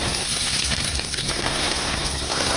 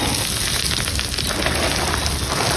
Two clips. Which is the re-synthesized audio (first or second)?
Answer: first